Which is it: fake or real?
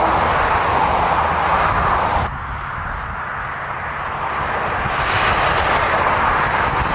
real